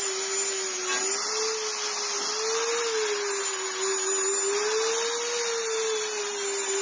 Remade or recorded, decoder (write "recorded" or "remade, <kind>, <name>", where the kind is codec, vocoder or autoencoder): recorded